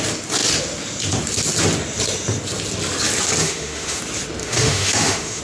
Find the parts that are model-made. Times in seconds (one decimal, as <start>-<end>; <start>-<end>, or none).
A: 3.4-4.0; 4.4-5.4